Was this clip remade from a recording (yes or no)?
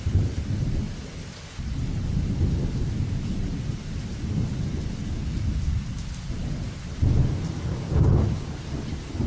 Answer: no